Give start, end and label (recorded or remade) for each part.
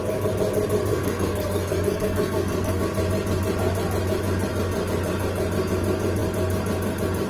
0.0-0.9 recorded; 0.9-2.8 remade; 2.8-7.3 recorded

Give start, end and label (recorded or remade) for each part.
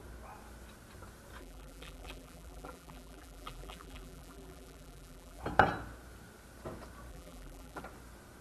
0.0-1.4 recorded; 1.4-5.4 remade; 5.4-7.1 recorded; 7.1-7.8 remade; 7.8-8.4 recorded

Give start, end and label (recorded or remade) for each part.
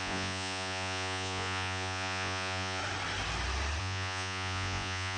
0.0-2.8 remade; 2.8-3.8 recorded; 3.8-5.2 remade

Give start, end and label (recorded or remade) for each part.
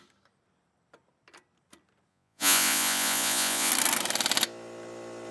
0.0-2.1 recorded; 2.1-3.7 remade; 3.7-5.3 recorded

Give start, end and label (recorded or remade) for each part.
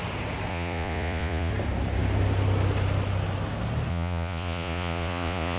0.0-0.5 recorded; 0.5-1.5 remade; 1.5-3.9 recorded; 3.9-5.6 remade